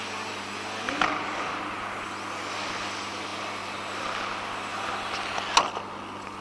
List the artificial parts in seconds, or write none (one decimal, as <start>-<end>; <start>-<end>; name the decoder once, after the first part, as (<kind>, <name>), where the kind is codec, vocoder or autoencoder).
none